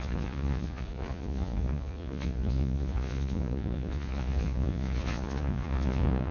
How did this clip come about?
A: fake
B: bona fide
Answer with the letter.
A